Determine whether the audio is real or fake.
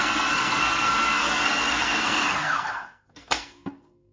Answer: fake